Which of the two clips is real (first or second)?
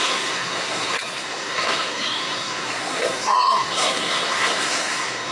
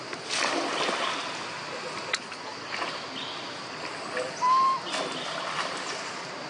second